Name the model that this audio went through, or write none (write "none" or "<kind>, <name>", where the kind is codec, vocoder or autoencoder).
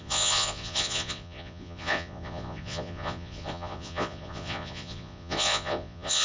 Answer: vocoder, Vocos